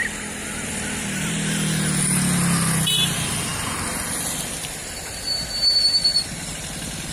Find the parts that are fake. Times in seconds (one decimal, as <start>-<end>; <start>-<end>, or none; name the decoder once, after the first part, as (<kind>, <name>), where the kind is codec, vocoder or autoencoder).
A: none